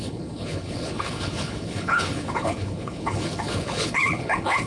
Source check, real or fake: fake